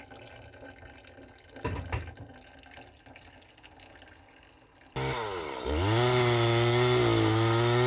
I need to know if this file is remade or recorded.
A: recorded